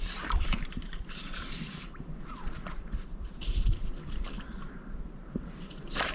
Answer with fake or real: fake